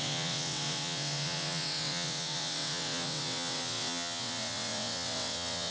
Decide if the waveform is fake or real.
fake